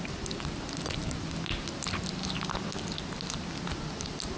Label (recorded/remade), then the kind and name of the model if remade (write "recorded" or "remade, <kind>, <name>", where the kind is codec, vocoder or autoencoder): recorded